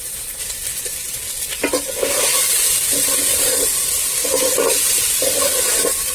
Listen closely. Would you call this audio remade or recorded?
recorded